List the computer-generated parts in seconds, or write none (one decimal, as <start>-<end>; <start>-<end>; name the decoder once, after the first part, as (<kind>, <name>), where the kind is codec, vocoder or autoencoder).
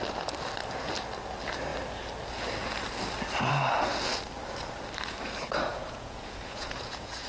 5.7-7.3 (vocoder, Vocos)